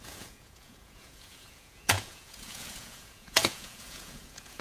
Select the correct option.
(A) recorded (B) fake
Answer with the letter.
B